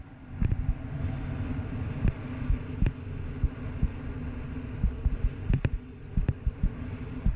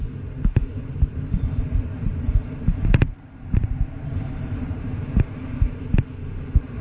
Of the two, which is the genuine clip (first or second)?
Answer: first